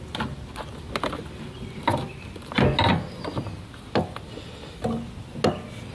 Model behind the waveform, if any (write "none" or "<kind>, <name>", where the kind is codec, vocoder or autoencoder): none